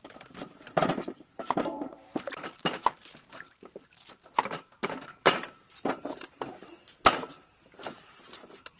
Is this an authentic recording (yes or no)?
no